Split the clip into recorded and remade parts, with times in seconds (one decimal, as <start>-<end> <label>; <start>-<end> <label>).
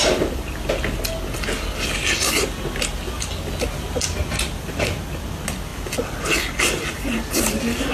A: 0.0-7.9 recorded